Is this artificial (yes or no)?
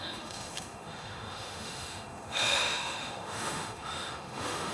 yes